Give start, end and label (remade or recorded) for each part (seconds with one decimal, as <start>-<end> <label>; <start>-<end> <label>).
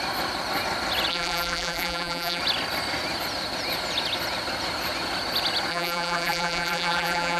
0.0-1.1 recorded; 1.1-2.4 remade; 2.4-5.7 recorded; 5.7-7.4 remade